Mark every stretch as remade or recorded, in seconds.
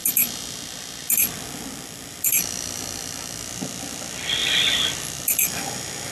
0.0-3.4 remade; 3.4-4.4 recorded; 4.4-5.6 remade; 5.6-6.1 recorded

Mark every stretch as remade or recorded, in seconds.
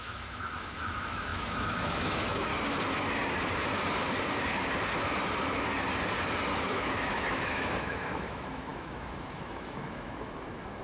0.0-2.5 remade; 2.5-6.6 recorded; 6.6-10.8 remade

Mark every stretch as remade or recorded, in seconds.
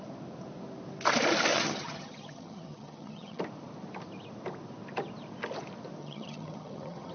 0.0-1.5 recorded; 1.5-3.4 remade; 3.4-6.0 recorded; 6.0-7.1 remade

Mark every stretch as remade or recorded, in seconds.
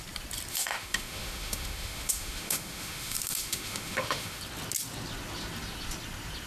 0.0-0.5 recorded; 0.5-4.4 remade; 4.4-6.5 recorded